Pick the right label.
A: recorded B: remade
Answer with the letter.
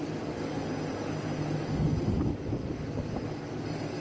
A